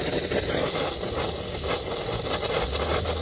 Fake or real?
real